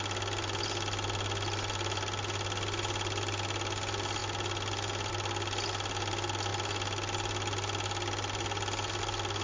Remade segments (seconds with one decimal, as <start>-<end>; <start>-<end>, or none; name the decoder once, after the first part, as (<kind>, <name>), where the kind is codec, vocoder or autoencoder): none